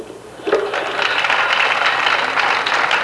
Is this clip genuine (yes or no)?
yes